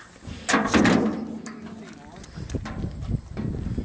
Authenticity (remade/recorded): recorded